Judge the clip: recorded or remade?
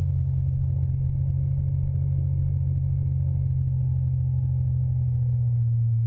recorded